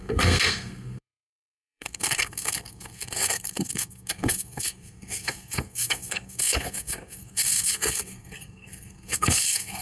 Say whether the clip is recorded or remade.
remade